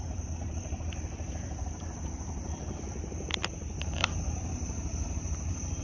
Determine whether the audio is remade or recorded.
remade